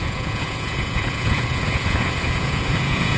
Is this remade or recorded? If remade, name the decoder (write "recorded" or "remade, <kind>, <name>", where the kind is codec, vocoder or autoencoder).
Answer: remade, vocoder, Vocos